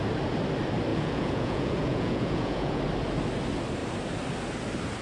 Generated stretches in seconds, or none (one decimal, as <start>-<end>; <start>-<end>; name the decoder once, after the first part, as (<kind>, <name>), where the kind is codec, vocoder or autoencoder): 0.9-2.8 (vocoder, Vocos)